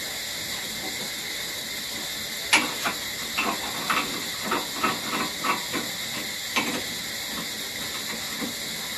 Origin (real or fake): real